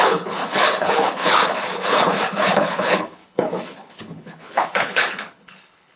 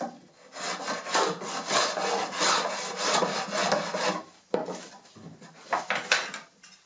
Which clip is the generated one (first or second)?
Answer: first